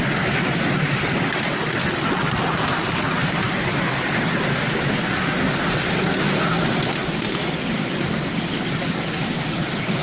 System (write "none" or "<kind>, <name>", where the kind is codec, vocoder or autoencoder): none